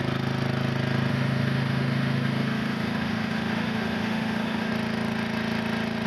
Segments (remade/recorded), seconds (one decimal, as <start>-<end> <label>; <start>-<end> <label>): 0.0-1.1 recorded; 1.1-4.7 remade; 4.7-6.1 recorded